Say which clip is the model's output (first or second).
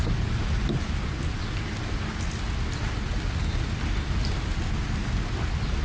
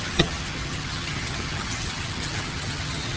second